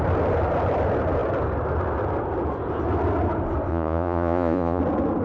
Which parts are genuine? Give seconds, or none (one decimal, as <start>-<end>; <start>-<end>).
0.0-3.7; 4.8-5.2